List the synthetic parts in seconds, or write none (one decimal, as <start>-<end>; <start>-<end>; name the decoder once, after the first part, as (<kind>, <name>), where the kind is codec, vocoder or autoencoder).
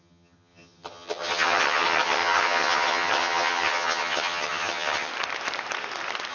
0.0-5.1 (vocoder, HiFi-GAN)